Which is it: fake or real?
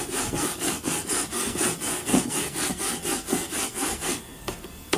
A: fake